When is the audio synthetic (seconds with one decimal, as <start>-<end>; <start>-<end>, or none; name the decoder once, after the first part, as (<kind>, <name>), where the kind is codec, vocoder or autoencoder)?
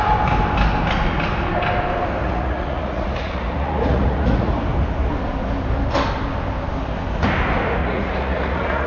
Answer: 2.2-4.5 (vocoder, Vocos); 7.8-8.9